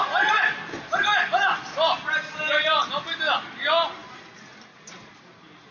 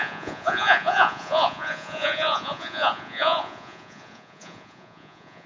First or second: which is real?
first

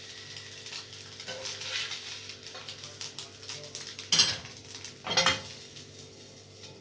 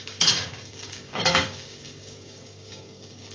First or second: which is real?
first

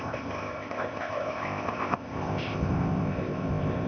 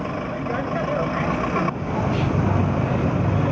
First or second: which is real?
second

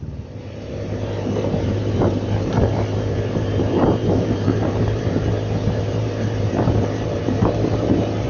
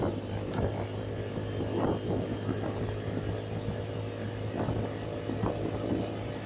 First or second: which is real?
second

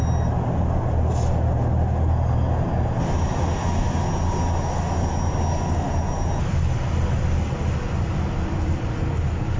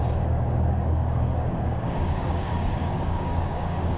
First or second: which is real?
first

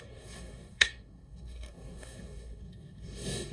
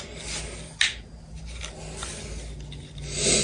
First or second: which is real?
second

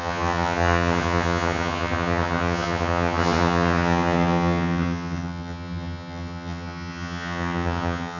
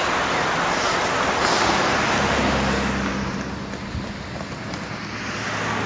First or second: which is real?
second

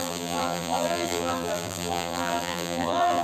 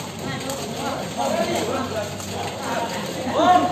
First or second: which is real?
second